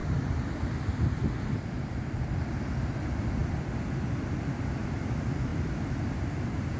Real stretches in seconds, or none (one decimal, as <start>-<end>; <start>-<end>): 0.0-6.8